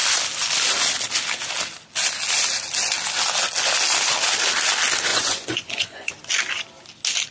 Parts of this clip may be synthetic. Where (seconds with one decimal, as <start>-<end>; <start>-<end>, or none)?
5.1-6.1